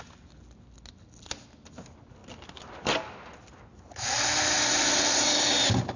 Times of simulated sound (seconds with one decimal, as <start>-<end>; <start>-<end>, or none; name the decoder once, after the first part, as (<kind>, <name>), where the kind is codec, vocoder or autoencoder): none